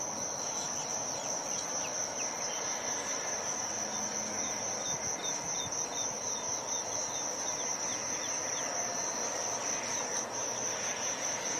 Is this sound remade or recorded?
recorded